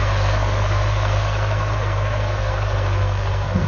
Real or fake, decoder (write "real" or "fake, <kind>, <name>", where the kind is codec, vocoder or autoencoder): fake, codec, SNAC